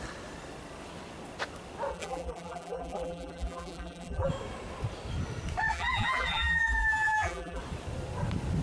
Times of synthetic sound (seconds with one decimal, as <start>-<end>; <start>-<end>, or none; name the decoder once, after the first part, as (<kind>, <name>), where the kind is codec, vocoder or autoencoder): 1.9-4.3 (vocoder, BigVGAN v2); 5.7-7.6